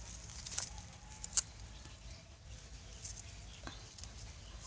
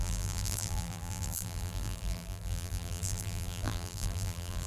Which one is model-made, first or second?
second